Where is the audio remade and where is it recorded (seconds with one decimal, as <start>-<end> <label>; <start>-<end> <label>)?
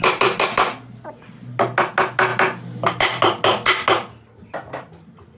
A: 0.0-5.4 recorded